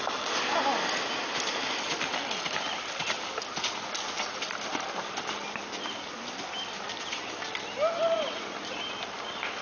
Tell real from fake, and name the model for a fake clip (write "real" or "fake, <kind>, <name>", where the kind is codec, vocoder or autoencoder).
real